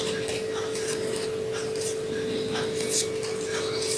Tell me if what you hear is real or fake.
real